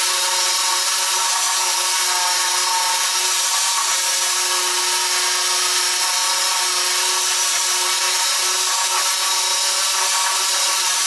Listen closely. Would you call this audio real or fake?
real